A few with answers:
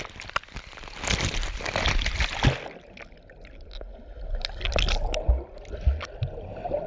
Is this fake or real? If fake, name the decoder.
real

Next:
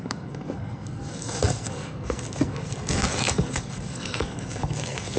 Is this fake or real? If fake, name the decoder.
fake, codec, SNAC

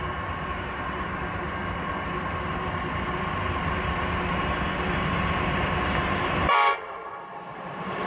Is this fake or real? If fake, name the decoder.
fake, vocoder, BigVGAN v2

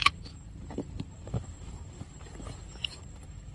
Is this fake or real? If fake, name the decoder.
fake, vocoder, BigVGAN v2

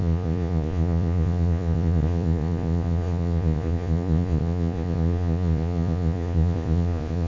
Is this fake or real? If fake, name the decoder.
fake, vocoder, Vocos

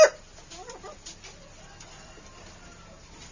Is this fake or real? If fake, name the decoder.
real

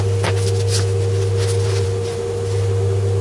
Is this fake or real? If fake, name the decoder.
real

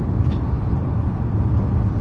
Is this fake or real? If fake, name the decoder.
fake, vocoder, BigVGAN v2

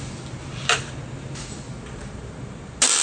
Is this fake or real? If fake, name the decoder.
real